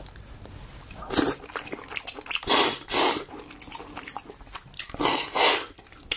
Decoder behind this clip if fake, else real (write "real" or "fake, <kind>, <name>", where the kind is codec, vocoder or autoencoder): real